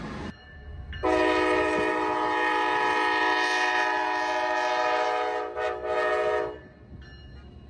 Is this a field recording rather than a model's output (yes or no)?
yes